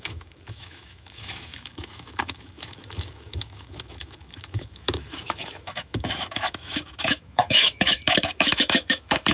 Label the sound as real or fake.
fake